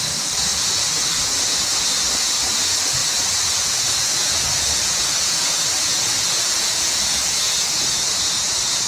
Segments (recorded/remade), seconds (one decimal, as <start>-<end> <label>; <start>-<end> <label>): 0.0-8.9 remade